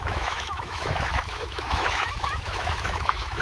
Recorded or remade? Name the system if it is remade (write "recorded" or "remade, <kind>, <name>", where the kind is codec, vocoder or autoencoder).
remade, autoencoder, DAC-VAE